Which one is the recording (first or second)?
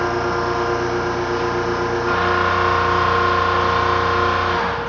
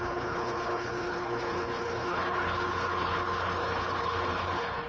first